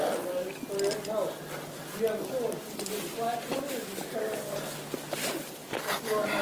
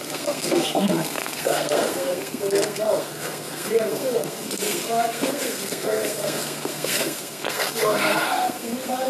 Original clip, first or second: first